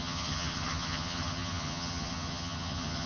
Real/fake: fake